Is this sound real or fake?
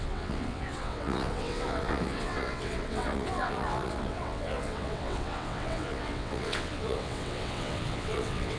fake